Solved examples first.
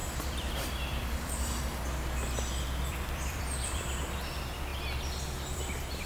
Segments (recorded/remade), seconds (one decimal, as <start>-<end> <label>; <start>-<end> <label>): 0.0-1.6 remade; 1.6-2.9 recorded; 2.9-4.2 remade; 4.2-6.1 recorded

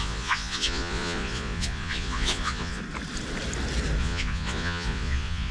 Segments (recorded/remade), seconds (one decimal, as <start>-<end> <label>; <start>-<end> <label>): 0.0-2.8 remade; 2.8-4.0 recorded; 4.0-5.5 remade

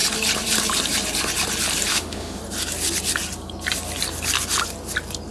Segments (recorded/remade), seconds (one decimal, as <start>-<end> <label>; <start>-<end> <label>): 0.0-1.9 recorded; 1.9-2.4 remade; 2.4-5.3 recorded

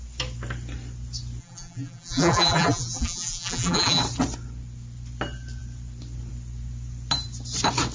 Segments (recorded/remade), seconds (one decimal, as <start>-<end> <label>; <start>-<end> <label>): 0.0-1.4 recorded; 1.4-4.0 remade; 4.0-7.9 recorded